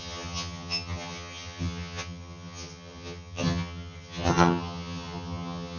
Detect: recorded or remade remade